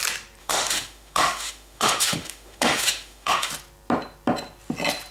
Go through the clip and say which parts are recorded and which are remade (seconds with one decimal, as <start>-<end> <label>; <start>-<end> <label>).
0.0-0.4 recorded; 0.4-3.5 remade; 3.5-5.1 recorded